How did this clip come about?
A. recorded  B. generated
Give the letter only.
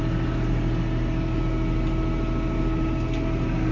A